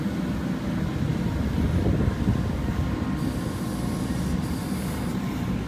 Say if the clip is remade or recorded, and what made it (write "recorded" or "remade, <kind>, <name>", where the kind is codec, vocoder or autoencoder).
recorded